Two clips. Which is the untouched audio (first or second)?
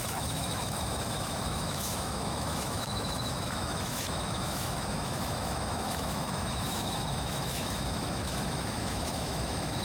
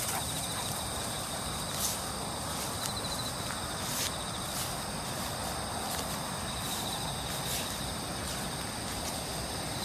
second